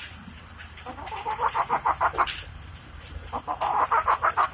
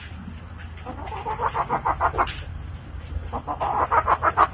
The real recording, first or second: second